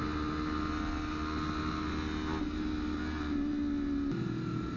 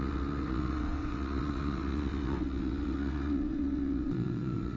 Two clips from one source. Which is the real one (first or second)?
first